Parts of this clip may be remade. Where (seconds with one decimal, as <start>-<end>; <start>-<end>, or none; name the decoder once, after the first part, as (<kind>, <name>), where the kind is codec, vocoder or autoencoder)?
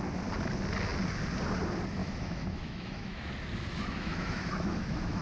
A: 2.0-3.3 (autoencoder, DAC-VAE); 3.7-5.2